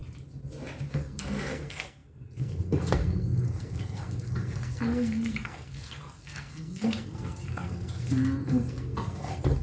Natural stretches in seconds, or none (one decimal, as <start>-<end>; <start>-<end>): 0.0-0.9